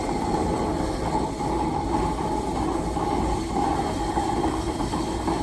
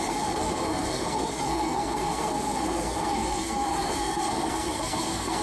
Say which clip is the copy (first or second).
second